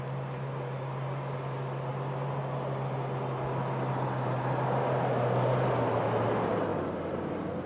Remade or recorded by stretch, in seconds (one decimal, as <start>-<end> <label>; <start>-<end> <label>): 0.0-7.7 recorded